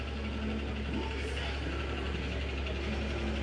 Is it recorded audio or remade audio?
recorded